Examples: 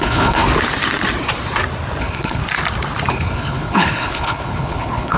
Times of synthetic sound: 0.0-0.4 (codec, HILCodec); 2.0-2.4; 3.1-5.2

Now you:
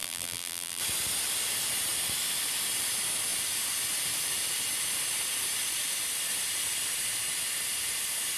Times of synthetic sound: 0.0-0.8 (vocoder, BigVGAN v2)

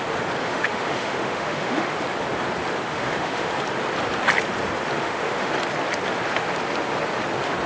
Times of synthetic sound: 0.4-2.0 (autoencoder, DAC-VAE); 2.9-3.5; 5.0-5.5

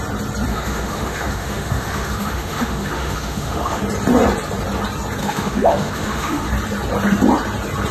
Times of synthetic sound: 0.5-3.8 (autoencoder, DAC-VAE); 5.2-6.5

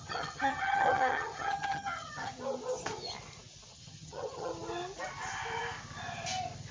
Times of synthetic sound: 0.0-2.3 (vocoder, HiFi-GAN); 3.7-4.5